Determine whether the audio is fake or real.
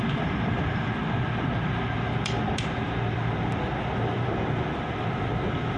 fake